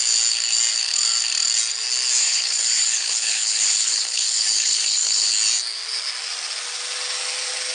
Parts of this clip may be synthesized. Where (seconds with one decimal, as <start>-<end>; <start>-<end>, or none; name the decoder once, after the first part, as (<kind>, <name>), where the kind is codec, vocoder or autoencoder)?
2.2-5.3 (codec, HILCodec)